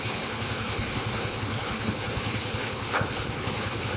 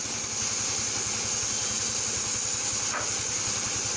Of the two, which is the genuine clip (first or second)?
second